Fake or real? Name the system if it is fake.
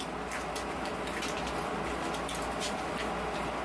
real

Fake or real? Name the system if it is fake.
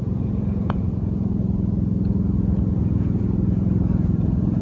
fake, vocoder, Vocos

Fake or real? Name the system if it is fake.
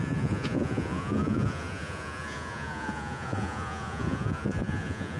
fake, vocoder, Vocos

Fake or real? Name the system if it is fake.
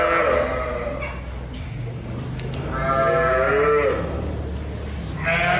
real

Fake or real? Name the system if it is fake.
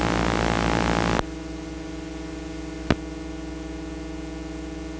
real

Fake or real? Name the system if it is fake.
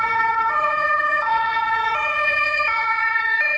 fake, vocoder, Vocos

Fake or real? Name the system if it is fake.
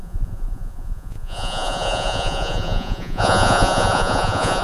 fake, vocoder, Vocos